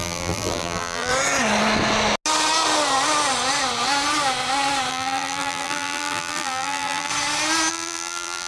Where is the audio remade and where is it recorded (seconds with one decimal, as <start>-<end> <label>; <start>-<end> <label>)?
0.0-1.1 remade; 1.1-4.9 recorded; 4.9-7.1 remade; 7.1-7.7 recorded; 7.7-8.5 remade